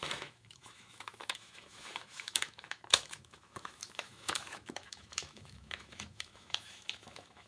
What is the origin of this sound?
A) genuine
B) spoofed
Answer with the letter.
B